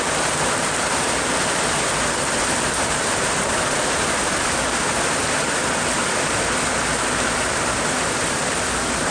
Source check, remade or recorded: remade